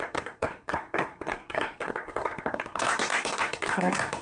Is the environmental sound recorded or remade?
remade